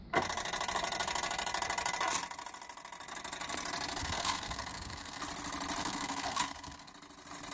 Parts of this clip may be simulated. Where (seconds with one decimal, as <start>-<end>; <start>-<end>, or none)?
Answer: 4.0-5.2; 5.8-6.9